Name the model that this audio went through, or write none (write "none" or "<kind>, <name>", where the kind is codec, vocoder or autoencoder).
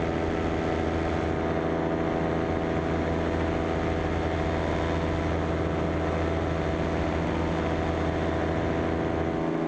none